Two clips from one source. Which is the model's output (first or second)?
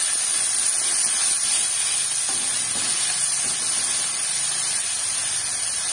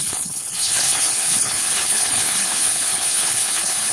second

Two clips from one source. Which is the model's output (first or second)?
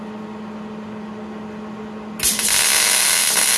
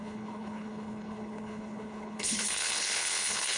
second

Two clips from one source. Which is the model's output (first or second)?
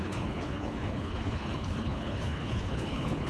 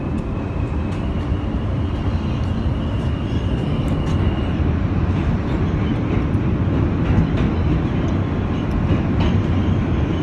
first